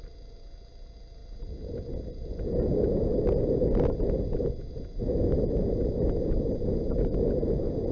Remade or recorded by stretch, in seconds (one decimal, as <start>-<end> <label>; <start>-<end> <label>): 0.0-7.9 recorded